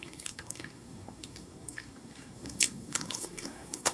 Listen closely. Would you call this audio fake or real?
fake